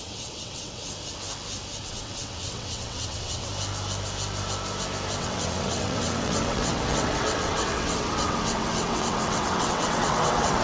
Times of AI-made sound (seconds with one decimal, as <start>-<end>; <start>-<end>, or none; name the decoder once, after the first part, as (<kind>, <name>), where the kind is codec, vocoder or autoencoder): 0.0-0.8 (vocoder, WaveNeXt); 1.8-3.5; 5.2-10.6